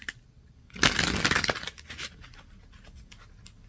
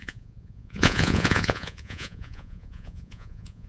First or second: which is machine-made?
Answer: second